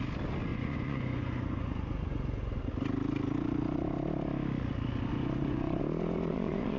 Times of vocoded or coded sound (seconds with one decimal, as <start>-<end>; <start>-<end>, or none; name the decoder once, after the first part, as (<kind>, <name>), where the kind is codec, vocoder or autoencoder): 0.5-2.6 (vocoder, Vocos); 5.1-5.8; 6.3-6.8